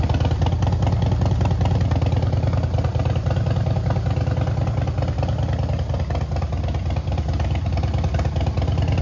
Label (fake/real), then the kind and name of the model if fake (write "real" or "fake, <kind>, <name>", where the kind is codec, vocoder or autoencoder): real